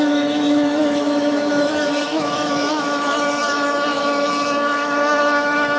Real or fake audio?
fake